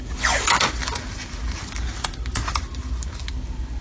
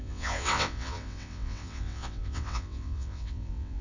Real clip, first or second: first